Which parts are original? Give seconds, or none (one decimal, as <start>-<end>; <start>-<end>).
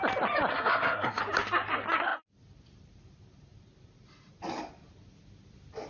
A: 0.0-0.5; 1.2-5.9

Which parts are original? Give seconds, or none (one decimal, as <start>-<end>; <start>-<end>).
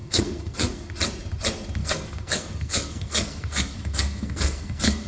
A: 0.9-1.8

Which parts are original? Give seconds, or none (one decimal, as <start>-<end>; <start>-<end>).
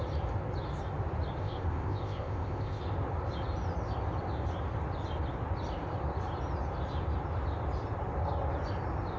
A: 0.0-1.4; 2.8-9.2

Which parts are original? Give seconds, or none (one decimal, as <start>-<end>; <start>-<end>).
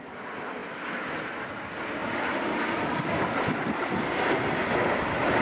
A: 0.0-5.4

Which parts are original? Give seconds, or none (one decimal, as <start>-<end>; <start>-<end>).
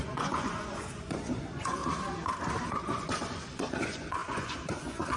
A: 1.8-2.8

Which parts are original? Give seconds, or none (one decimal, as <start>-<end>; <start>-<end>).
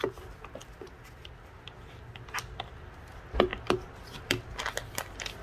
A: 0.0-5.4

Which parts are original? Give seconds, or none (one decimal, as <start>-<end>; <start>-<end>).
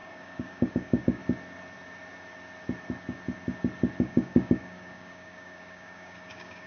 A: 1.2-4.0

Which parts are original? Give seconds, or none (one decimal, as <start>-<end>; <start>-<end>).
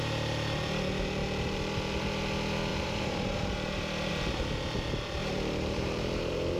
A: 0.0-2.7; 4.1-5.2